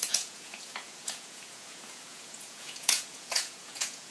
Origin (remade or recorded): remade